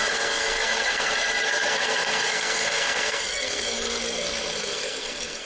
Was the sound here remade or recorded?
remade